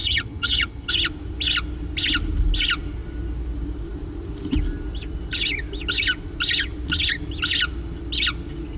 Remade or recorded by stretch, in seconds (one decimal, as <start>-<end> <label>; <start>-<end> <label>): 0.0-0.9 remade; 0.9-8.8 recorded